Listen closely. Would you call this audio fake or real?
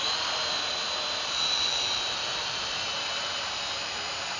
fake